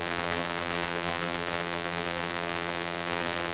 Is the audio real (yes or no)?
no